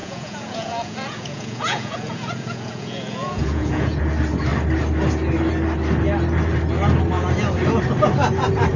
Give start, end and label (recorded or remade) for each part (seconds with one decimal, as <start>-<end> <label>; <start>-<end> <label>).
0.0-4.0 remade; 4.0-8.8 recorded